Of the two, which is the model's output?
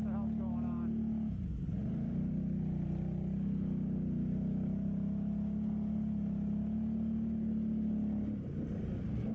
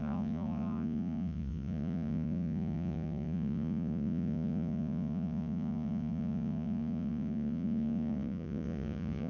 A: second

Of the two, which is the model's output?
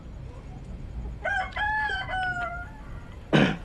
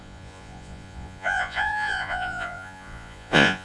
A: second